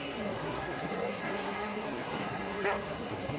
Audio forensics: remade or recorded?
remade